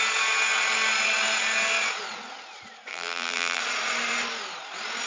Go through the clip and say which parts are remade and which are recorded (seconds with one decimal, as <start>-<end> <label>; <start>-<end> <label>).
0.0-2.9 recorded; 2.9-3.6 remade; 3.6-5.1 recorded